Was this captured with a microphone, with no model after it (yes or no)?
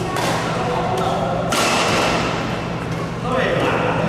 yes